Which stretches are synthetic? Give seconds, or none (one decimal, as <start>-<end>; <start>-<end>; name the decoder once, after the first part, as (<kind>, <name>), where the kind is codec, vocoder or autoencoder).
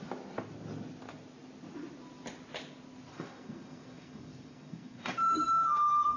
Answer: 3.1-6.2 (codec, SNAC)